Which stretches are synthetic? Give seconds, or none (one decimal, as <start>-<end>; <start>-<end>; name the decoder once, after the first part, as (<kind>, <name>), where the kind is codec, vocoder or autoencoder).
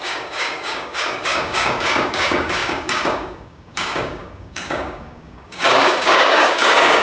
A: 0.0-7.0 (codec, DAC)